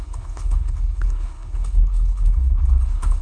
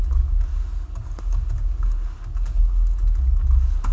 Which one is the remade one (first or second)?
first